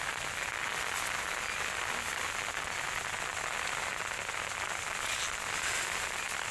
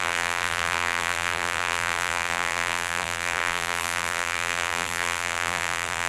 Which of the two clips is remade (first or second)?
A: second